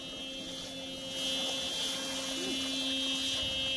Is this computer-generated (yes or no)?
no